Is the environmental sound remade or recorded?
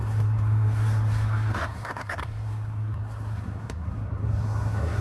remade